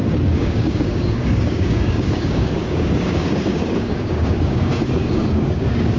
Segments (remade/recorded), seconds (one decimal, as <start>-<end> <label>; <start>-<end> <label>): 0.0-6.0 remade